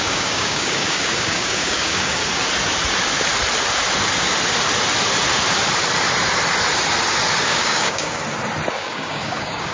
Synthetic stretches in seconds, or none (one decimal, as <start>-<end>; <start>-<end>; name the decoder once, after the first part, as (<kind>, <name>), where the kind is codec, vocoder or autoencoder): 0.0-2.2 (codec, DAC); 7.4-8.2; 8.7-9.7